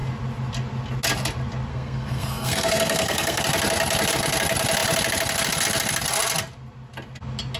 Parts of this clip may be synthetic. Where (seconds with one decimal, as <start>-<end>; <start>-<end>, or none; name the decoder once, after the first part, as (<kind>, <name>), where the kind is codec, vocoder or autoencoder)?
1.7-3.4 (codec, SNAC)

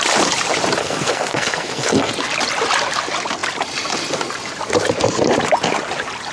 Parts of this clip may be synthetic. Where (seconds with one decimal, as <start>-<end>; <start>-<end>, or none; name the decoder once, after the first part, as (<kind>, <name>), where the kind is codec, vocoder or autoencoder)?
0.8-2.1 (codec, SNAC)

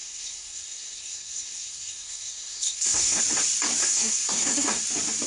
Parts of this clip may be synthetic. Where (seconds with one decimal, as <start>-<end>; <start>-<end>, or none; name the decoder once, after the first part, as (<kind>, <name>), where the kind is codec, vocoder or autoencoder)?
0.0-3.2 (codec, SNAC); 3.8-4.8

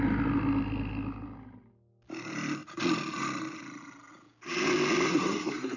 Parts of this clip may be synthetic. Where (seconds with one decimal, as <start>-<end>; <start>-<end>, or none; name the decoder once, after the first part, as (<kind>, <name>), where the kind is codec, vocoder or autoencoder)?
5.1-5.8 (codec, SNAC)

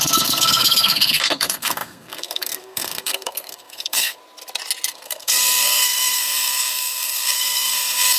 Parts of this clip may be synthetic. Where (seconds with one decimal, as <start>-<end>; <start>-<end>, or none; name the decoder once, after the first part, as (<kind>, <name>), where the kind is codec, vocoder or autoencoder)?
0.0-4.2 (codec, SNAC); 4.9-8.2

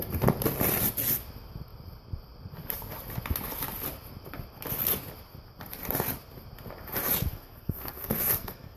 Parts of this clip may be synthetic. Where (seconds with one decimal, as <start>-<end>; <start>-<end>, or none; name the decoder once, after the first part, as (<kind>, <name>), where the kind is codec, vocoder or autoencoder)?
7.3-8.8 (codec, SNAC)

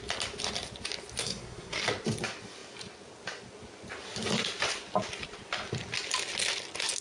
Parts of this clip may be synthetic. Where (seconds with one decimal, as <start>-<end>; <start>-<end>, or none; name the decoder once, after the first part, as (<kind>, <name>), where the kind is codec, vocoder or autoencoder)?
1.2-1.8 (codec, SNAC)